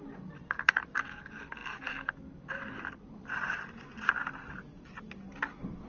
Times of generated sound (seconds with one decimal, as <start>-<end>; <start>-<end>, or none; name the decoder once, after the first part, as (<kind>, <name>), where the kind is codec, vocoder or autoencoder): none